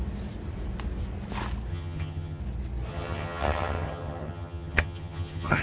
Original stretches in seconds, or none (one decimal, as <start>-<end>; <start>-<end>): 0.0-1.7; 2.4-2.9